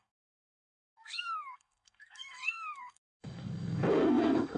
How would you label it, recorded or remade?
remade